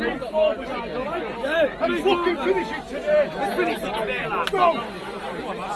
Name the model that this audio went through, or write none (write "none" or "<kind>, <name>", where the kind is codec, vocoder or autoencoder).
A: none